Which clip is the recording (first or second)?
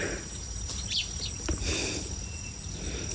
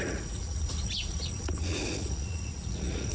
first